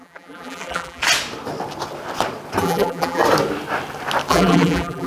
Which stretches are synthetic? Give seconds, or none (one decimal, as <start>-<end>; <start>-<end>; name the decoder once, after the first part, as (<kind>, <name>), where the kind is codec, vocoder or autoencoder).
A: 0.0-1.0 (vocoder, BigVGAN v2); 2.6-3.2; 4.3-5.1